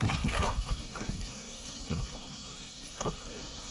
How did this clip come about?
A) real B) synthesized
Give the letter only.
B